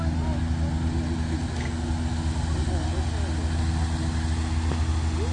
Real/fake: real